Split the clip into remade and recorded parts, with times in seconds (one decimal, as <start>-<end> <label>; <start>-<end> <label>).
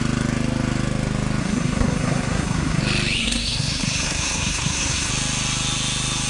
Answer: 0.0-1.4 recorded; 1.4-2.8 remade; 2.8-3.2 recorded; 3.2-5.1 remade; 5.1-6.3 recorded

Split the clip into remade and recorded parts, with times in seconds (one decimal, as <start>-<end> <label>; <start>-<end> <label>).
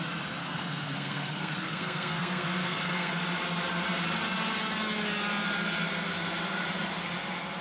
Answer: 0.0-0.4 recorded; 0.4-3.1 remade; 3.1-7.6 recorded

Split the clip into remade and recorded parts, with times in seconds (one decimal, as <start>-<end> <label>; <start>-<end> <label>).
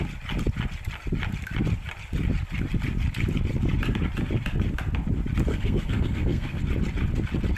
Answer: 0.0-5.5 recorded; 5.5-6.6 remade; 6.6-7.6 recorded